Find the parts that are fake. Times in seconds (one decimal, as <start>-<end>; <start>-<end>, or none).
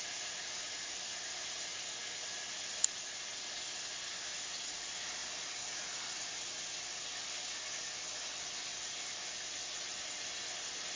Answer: none